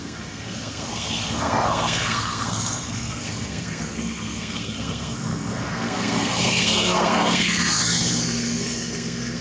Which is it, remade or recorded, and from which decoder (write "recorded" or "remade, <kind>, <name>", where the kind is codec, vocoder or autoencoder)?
remade, codec, SNAC